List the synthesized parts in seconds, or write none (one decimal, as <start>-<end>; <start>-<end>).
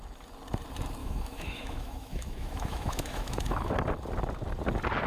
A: 1.0-3.7